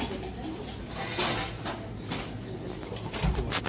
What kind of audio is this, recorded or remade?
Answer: recorded